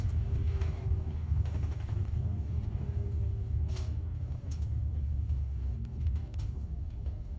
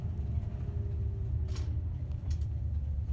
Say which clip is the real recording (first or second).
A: second